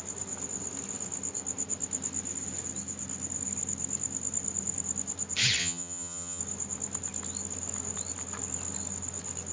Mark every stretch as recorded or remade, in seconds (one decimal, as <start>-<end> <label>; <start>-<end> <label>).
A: 0.0-5.6 recorded; 5.6-6.4 remade; 6.4-9.5 recorded